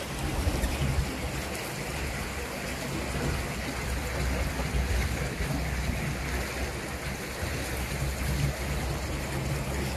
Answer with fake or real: real